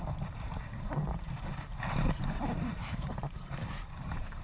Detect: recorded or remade remade